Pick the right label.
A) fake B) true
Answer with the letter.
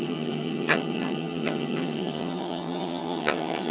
A